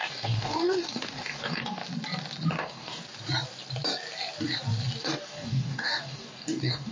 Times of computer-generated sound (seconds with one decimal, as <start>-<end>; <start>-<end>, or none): 0.0-1.8; 2.5-3.0; 5.0-6.9